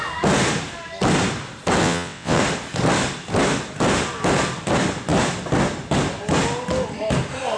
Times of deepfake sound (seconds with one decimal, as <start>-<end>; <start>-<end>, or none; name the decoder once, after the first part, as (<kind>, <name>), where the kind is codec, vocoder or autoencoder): 1.8-2.4 (vocoder, WaveNeXt)